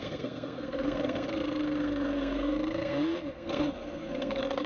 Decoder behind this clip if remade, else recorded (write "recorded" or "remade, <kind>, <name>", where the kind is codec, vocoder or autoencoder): remade, codec, SNAC